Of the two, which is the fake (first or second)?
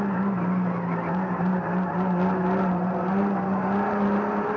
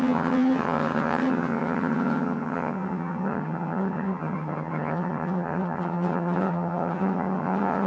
second